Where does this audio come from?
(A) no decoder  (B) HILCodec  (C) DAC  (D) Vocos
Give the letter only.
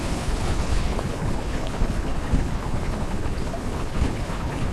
B